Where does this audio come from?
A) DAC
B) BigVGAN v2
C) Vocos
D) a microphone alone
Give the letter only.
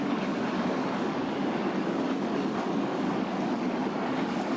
A